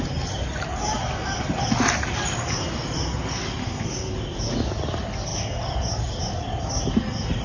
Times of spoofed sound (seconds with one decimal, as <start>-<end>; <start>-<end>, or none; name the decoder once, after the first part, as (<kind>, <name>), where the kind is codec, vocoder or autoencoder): 3.6-4.1 (codec, SNAC)